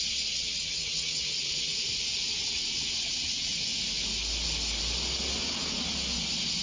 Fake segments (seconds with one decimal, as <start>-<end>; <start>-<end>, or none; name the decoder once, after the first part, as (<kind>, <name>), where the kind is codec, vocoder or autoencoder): 0.0-1.7 (vocoder, WaveNeXt); 2.3-3.5

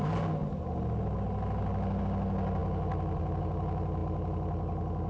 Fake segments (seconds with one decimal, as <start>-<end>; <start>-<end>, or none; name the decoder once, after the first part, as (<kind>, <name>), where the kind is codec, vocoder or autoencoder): none

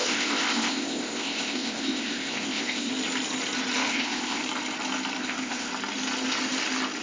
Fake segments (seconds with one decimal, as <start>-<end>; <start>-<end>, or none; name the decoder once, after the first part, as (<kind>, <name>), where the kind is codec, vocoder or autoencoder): 0.0-2.9 (codec, ZipCodec); 3.9-4.4; 5.2-5.7

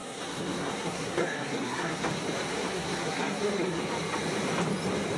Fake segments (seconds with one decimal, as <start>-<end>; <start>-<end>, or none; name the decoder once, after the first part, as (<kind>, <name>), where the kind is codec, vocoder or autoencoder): 0.0-2.1 (codec, SNAC); 2.5-3.8

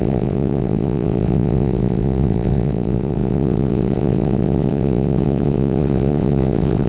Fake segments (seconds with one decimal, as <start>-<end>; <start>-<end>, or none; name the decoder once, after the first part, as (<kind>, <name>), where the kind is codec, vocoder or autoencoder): 0.0-6.9 (vocoder, WaveNeXt)